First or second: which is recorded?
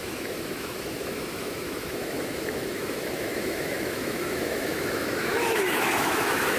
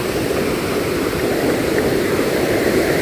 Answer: second